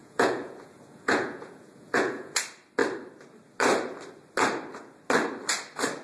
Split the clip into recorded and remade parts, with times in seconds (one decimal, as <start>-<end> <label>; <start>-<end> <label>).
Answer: 0.0-2.4 remade; 2.4-6.0 recorded